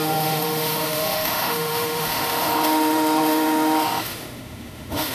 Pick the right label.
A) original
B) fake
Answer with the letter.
B